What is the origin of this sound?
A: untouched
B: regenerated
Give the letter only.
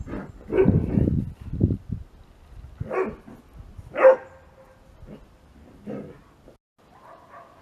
A